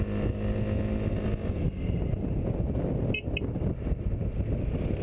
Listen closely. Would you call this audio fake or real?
real